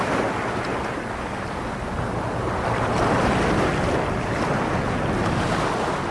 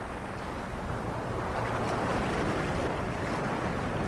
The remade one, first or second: second